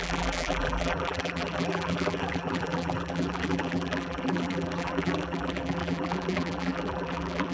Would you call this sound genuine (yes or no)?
no